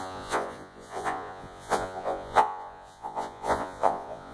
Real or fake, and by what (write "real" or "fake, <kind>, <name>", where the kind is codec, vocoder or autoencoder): fake, vocoder, Vocos